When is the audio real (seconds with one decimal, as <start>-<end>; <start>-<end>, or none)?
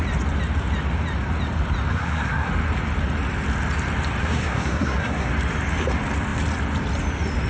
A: 0.0-1.9; 2.5-4.2; 5.3-7.5